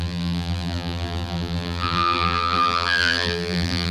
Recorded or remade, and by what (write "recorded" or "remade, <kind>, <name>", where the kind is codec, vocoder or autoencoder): remade, vocoder, BigVGAN v2